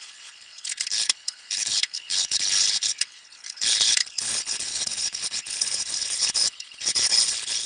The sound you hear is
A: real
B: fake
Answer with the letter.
B